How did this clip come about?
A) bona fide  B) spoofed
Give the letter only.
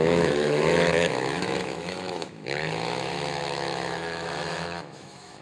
B